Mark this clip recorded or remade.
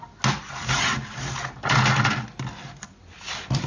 recorded